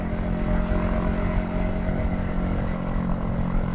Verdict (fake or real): fake